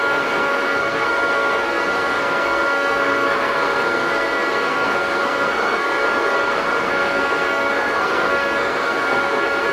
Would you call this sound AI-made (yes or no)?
yes